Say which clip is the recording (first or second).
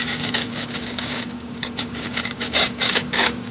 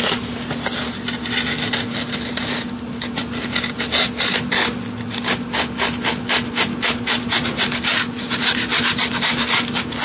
second